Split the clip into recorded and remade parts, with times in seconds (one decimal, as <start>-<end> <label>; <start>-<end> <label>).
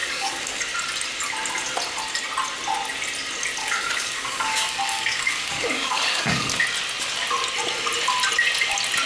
0.0-0.6 remade; 0.6-3.6 recorded; 3.6-6.6 remade; 6.6-9.1 recorded